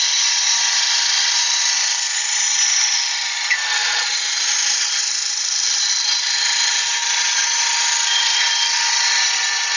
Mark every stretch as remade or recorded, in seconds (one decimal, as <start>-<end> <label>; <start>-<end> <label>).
0.0-9.8 recorded